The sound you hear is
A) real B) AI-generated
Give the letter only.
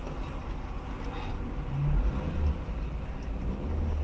A